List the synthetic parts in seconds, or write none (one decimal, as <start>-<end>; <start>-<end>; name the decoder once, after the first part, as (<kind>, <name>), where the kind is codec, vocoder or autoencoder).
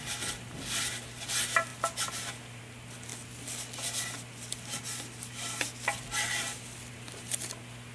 none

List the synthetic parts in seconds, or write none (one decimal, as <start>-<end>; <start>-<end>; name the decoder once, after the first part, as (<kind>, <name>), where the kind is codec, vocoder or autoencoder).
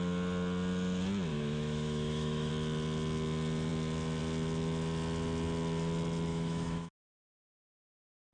1.3-2.5 (autoencoder, DAC-VAE); 6.3-7.6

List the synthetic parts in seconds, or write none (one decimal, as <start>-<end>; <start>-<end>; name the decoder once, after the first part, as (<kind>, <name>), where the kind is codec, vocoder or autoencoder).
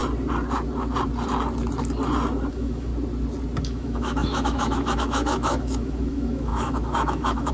2.5-2.9 (autoencoder, DAC-VAE); 3.6-7.5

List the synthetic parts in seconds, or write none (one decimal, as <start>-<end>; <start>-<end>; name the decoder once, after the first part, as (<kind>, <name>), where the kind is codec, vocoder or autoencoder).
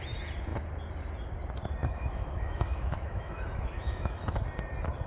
1.8-4.4 (autoencoder, DAC-VAE)